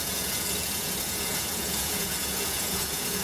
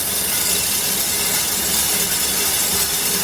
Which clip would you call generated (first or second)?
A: first